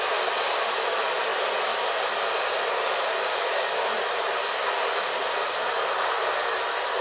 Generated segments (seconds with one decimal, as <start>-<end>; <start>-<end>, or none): none